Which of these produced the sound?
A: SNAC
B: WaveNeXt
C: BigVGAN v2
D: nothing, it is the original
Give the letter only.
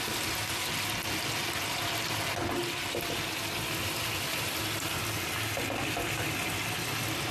D